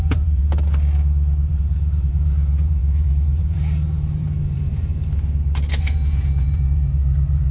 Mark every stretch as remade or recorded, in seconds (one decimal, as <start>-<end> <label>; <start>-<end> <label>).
0.0-0.4 remade; 0.4-1.5 recorded; 1.5-4.9 remade; 4.9-5.7 recorded; 5.7-7.5 remade